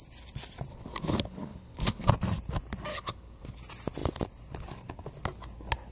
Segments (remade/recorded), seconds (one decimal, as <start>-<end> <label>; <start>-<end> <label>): 0.0-0.7 recorded; 0.7-2.1 remade; 2.1-2.9 recorded; 2.9-3.6 remade; 3.6-5.9 recorded